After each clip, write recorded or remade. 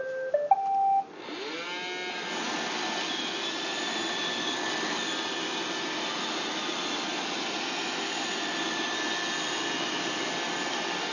recorded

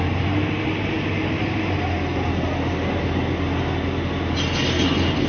recorded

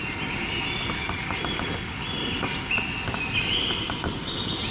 recorded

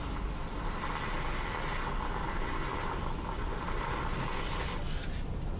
recorded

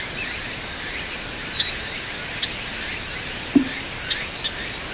recorded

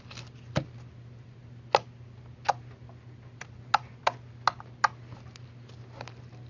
recorded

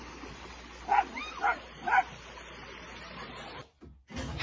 recorded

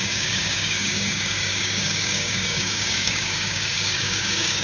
remade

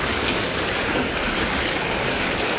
remade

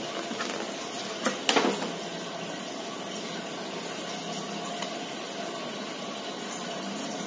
recorded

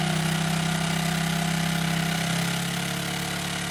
recorded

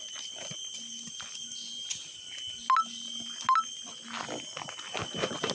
recorded